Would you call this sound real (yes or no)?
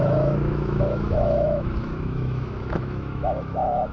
no